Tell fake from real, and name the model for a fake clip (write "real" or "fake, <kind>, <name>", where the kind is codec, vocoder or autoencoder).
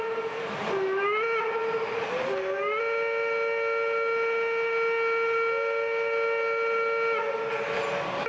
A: real